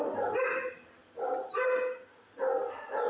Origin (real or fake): real